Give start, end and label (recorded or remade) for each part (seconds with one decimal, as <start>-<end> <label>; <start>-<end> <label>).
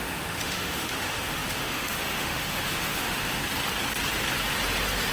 0.0-3.4 remade; 3.4-5.1 recorded